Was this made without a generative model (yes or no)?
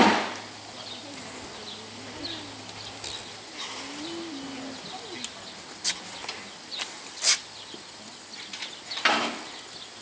yes